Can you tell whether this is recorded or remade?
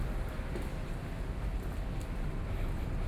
recorded